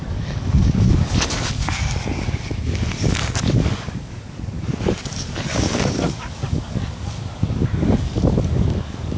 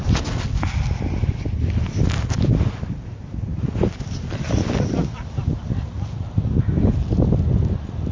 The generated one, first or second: first